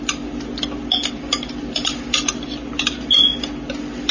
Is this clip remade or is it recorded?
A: recorded